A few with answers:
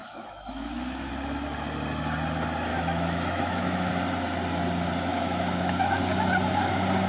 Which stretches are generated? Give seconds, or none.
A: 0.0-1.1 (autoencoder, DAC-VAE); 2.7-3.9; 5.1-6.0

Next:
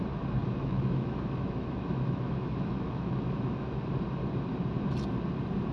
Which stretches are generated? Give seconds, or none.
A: 0.4-3.8 (autoencoder, DAC-VAE)

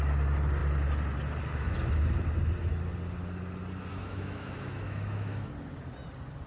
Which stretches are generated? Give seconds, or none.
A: 3.9-5.5 (autoencoder, DAC-VAE)

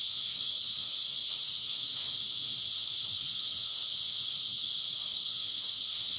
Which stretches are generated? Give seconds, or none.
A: 0.0-6.2 (autoencoder, DAC-VAE)

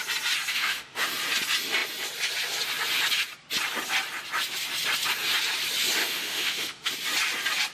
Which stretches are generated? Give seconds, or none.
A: 0.5-1.1 (autoencoder, DAC-VAE); 6.0-6.9

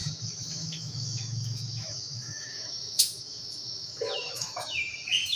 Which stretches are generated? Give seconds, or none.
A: 0.0-5.4 (autoencoder, DAC-VAE)

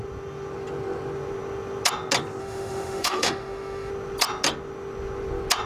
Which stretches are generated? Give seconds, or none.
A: 2.4-3.9 (autoencoder, DAC-VAE)